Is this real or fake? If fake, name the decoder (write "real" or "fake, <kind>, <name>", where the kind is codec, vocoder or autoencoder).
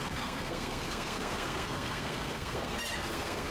fake, codec, SNAC